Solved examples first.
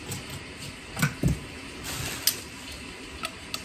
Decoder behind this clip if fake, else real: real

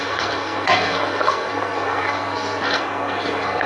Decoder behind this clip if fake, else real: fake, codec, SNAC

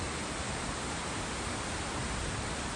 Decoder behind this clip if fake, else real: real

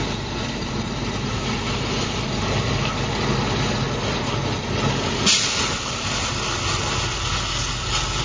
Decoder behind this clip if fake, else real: real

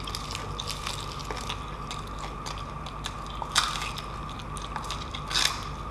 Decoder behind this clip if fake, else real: real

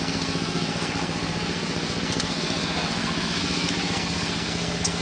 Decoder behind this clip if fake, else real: fake, codec, SNAC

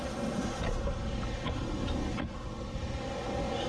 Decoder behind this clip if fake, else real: real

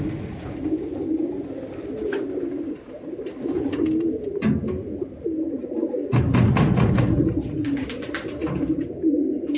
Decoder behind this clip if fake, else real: real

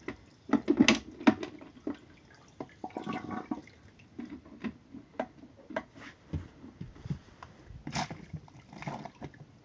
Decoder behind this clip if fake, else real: real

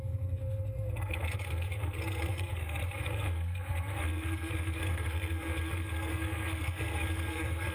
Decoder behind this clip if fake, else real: fake, codec, SNAC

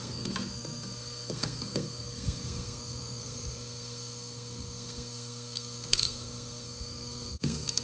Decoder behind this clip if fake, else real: fake, codec, SNAC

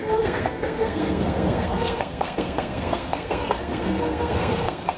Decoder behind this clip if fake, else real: fake, codec, SNAC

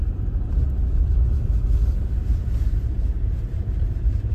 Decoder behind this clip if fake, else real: real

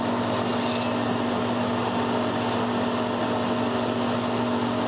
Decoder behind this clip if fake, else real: real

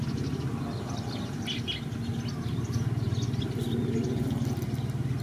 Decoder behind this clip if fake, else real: real